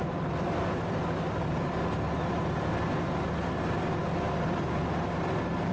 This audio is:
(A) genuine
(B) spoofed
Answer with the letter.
A